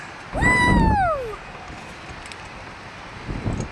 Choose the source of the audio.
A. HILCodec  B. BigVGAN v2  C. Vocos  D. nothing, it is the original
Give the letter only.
D